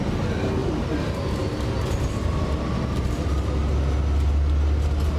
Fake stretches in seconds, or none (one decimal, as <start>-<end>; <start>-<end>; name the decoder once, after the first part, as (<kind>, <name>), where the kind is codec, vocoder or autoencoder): none